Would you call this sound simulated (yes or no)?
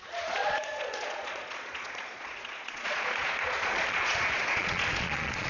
yes